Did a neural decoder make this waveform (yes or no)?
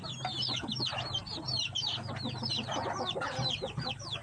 no